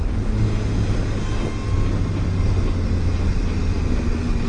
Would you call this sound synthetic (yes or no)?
no